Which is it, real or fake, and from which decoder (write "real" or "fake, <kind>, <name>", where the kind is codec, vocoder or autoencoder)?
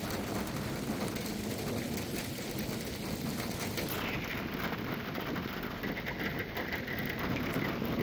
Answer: real